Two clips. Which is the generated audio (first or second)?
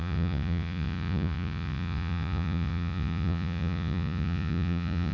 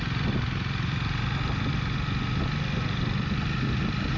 first